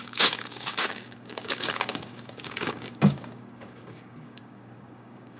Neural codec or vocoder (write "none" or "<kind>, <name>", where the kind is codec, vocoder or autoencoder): codec, DAC